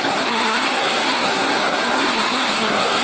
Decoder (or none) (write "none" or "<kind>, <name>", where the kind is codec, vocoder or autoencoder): codec, SNAC